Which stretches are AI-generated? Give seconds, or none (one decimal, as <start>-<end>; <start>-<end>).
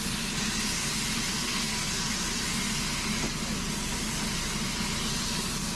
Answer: 1.3-2.0